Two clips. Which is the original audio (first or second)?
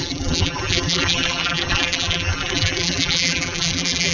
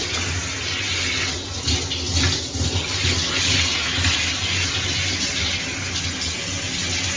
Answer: second